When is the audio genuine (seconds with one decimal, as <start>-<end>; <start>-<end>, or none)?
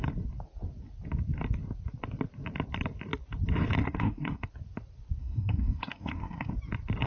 0.0-3.8; 4.5-5.2; 6.5-7.1